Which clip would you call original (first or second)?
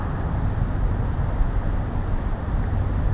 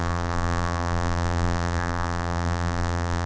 first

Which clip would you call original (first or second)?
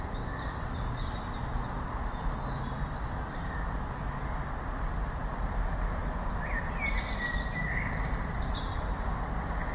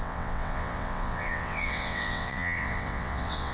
first